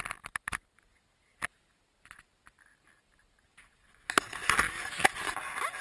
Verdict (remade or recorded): recorded